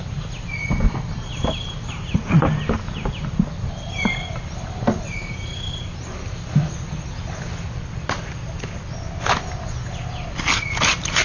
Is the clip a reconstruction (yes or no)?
no